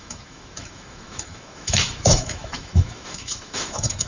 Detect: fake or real fake